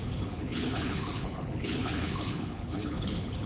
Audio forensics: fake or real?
fake